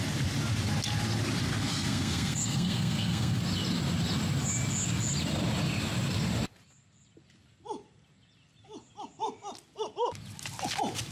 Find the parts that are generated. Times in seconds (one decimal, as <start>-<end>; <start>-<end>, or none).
1.6-3.4